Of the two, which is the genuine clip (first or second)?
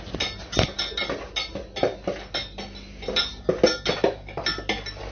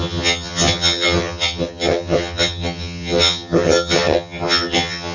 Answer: first